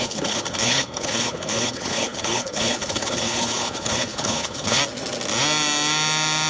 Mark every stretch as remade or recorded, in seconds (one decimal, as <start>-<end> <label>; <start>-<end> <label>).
0.0-4.8 remade; 4.8-6.5 recorded